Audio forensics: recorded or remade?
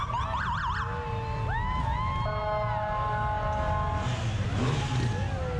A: recorded